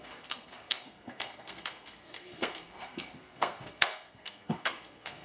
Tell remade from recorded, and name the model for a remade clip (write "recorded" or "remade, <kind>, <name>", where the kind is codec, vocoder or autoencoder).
remade, codec, SNAC